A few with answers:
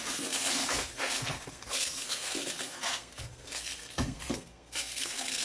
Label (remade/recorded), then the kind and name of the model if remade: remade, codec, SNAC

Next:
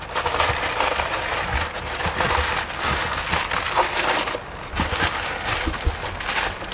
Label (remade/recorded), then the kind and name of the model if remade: recorded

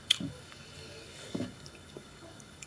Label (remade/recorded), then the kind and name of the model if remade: remade, codec, DAC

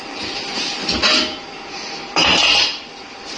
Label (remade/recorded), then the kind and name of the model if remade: recorded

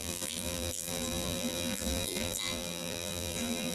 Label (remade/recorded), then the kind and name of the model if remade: remade, vocoder, BigVGAN v2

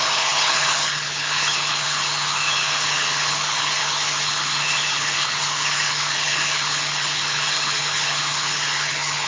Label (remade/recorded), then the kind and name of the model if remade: remade, codec, HILCodec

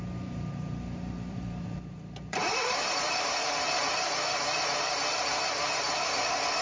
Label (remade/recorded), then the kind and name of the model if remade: remade, vocoder, BigVGAN v2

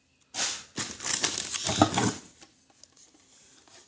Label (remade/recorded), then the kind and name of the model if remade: recorded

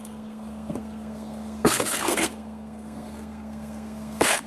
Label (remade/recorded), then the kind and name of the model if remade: remade, codec, SNAC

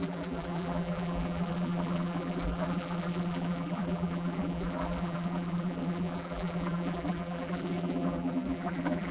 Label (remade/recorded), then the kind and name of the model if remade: remade, vocoder, BigVGAN v2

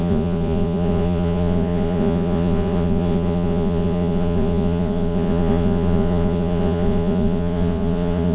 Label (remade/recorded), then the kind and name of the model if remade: remade, vocoder, Vocos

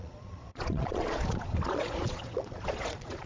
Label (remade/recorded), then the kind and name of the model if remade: remade, vocoder, Vocos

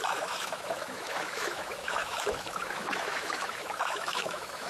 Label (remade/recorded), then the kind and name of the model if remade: remade, autoencoder, DAC-VAE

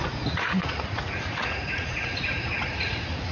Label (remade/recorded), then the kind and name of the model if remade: remade, vocoder, Vocos